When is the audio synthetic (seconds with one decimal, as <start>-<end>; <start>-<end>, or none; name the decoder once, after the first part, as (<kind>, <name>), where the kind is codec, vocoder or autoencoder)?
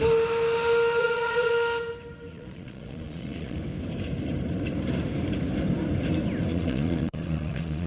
1.0-1.5 (vocoder, Vocos); 2.3-3.6; 6.5-7.9